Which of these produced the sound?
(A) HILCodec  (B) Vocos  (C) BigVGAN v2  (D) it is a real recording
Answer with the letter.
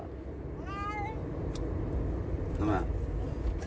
D